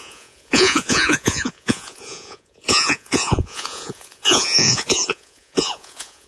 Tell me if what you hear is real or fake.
fake